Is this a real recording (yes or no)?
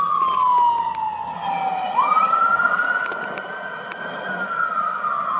yes